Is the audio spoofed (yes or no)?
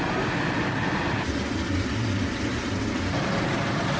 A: no